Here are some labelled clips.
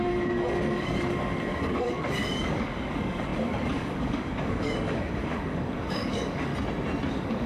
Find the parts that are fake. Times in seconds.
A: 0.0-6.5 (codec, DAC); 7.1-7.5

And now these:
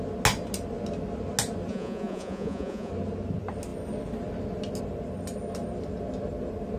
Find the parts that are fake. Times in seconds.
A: 1.7-2.9 (vocoder, Vocos)